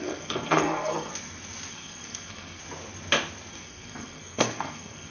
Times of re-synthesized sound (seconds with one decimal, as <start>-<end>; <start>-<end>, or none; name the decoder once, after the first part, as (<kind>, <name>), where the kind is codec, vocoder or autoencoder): 0.0-1.1 (codec, SNAC); 1.7-2.6; 3.5-5.1